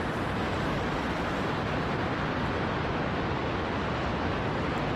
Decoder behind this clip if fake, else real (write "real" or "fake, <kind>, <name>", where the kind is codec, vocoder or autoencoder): real